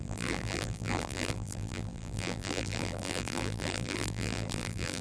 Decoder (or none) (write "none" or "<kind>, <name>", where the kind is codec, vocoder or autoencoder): vocoder, BigVGAN v2